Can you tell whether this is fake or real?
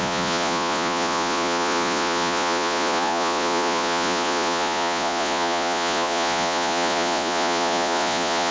fake